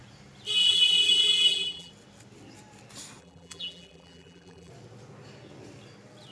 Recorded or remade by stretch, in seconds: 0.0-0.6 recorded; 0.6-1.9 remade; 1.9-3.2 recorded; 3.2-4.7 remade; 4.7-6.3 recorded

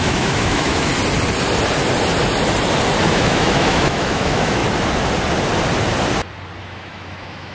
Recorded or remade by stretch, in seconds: 0.0-0.9 remade; 0.9-3.1 recorded; 3.1-4.6 remade; 4.6-6.6 recorded; 6.6-7.5 remade

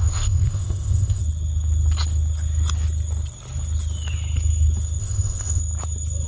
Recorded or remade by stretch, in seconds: 0.0-1.2 remade; 1.2-5.0 recorded; 5.0-5.6 remade; 5.6-6.3 recorded

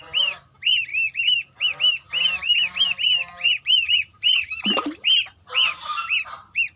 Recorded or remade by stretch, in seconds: 0.0-3.1 recorded; 3.1-6.8 remade

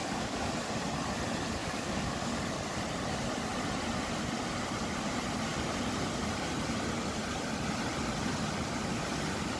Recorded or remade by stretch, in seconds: 0.0-0.5 remade; 0.5-1.6 recorded; 1.6-2.4 remade; 2.4-9.6 recorded

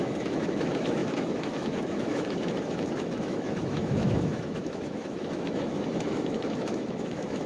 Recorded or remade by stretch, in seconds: 0.0-7.5 remade

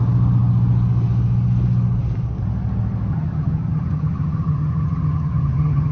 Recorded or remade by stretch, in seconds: 0.0-3.1 recorded; 3.1-5.9 remade